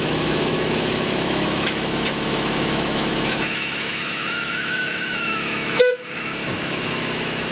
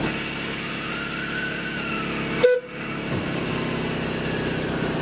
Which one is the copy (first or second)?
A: first